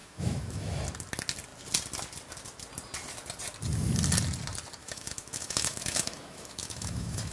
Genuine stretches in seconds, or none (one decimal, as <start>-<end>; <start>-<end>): 0.8-4.8